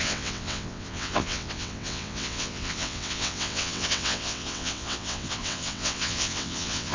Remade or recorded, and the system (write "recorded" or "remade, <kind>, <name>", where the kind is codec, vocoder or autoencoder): remade, vocoder, WaveNeXt